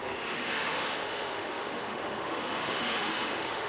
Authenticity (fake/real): fake